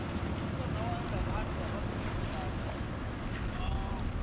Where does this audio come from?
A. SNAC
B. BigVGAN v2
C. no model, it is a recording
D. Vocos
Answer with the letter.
C